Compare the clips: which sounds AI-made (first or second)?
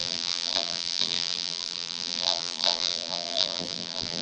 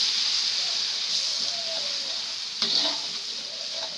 first